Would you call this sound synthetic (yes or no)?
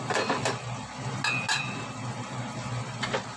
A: no